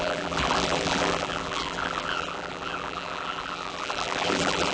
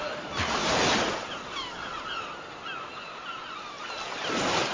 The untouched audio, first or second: second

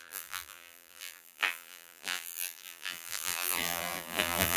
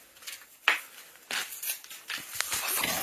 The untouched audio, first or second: second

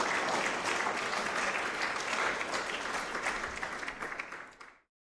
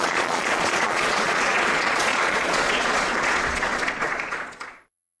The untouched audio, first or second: first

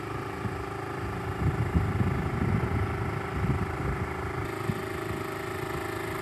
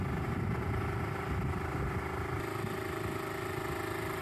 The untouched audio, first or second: first